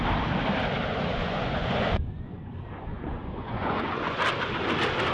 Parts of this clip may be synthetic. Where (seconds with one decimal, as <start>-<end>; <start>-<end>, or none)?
0.9-2.5; 2.9-4.2